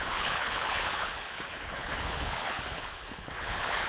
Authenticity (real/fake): fake